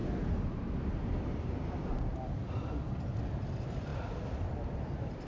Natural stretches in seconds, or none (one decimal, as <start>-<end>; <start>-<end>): 0.0-5.3